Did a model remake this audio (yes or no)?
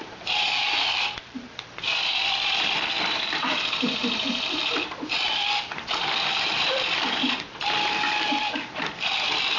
yes